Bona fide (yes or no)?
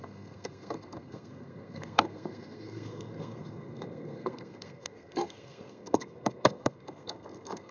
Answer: no